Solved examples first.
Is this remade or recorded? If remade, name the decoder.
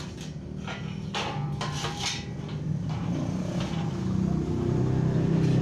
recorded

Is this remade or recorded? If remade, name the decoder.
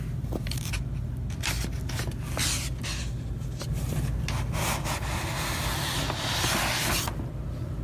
recorded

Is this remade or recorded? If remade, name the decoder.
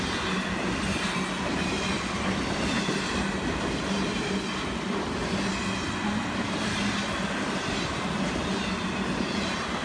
recorded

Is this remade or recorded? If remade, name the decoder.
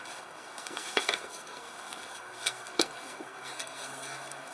remade, codec, SNAC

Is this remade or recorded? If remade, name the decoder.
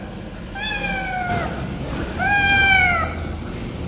recorded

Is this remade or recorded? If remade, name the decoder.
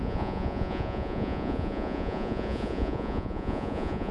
remade, vocoder, Vocos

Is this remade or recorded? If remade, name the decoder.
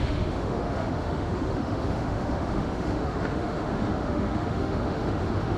remade, autoencoder, DAC-VAE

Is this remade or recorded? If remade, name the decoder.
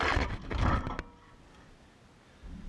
recorded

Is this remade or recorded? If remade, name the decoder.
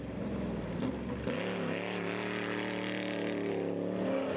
recorded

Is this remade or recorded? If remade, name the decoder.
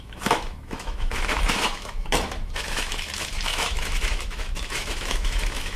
remade, autoencoder, DAC-VAE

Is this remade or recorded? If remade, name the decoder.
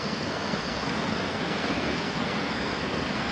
remade, codec, SNAC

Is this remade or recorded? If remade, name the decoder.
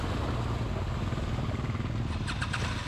recorded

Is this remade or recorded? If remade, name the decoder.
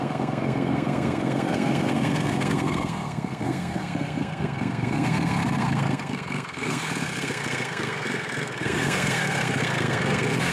remade, codec, SNAC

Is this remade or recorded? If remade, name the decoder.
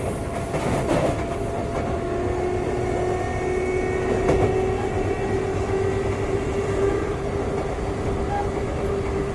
recorded